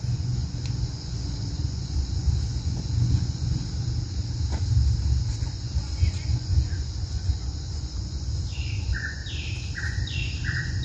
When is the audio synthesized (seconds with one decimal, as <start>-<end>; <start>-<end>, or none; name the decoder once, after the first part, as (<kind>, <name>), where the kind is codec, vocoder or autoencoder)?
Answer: 0.0-3.6 (vocoder, Vocos); 5.4-9.2; 9.8-10.8